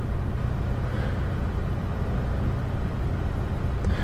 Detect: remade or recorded recorded